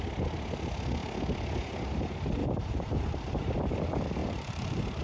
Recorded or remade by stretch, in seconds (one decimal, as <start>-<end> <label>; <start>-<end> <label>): 0.0-2.4 recorded; 2.4-3.6 remade; 3.6-4.2 recorded; 4.2-5.0 remade